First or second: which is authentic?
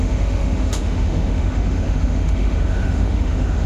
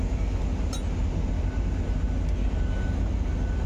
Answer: second